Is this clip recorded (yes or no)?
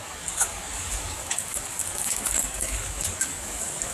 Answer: no